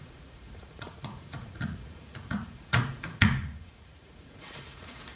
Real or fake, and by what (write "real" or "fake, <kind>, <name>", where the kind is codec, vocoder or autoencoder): fake, vocoder, Vocos